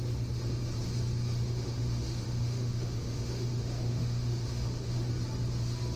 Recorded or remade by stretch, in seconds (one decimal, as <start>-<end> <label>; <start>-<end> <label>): 0.0-1.5 recorded; 1.5-5.1 remade; 5.1-6.0 recorded